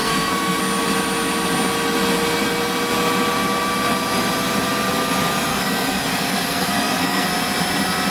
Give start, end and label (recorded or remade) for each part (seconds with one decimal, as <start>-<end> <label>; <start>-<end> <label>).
0.0-0.6 remade; 0.6-5.5 recorded; 5.5-7.3 remade; 7.3-8.1 recorded